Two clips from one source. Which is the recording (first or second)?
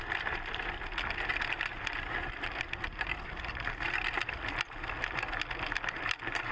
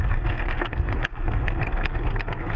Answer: first